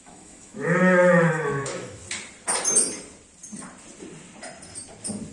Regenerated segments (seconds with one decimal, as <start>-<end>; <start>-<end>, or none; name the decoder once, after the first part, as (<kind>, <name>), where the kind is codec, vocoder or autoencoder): 0.0-2.0 (autoencoder, DAC-VAE)